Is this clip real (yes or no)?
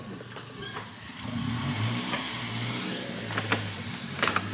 yes